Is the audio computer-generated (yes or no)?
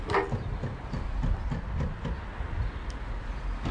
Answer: no